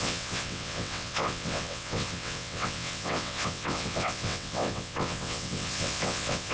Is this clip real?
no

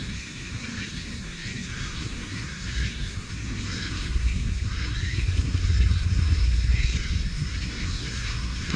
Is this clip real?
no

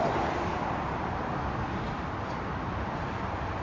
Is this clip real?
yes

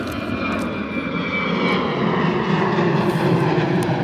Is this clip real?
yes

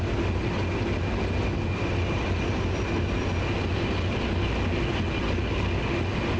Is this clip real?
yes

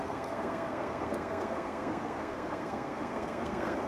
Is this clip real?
no